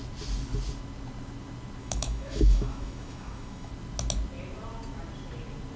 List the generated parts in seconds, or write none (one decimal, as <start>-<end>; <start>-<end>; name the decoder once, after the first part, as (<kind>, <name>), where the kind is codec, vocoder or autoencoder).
1.8-3.7 (autoencoder, DAC-VAE)